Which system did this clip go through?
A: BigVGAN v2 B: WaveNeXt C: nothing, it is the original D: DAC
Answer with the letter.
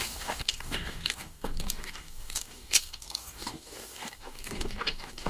D